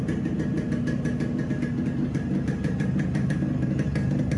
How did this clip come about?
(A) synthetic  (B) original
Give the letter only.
B